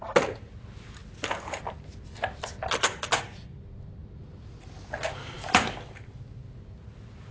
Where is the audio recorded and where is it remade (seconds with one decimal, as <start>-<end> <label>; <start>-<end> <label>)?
0.0-7.3 recorded